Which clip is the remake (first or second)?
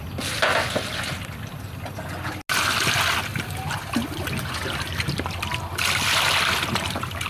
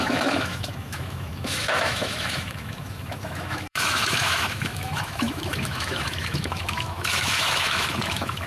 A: second